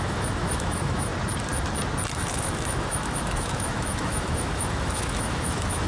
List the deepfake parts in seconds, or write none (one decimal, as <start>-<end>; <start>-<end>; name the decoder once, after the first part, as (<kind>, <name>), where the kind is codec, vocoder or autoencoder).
0.0-1.1 (autoencoder, DAC-VAE); 2.1-5.9